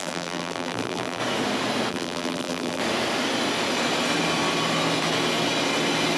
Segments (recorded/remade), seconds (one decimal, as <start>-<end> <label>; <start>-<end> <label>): 0.0-1.2 remade; 1.2-1.9 recorded; 1.9-2.8 remade; 2.8-6.2 recorded